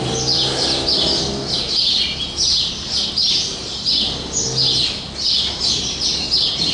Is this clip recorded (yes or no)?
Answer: yes